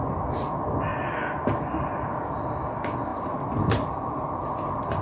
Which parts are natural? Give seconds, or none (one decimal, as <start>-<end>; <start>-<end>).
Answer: 0.0-3.1; 4.3-5.0